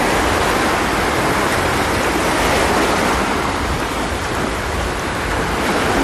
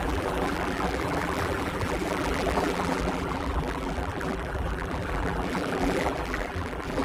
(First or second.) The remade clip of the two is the second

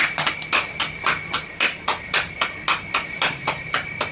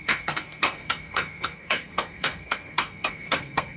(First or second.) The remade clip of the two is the second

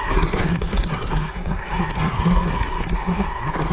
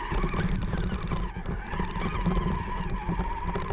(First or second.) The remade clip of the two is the first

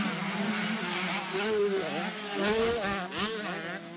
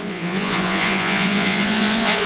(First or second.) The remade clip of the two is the second